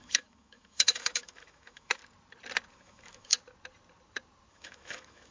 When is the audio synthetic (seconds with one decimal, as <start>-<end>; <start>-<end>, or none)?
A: 0.0-2.0; 2.7-3.3; 4.5-5.3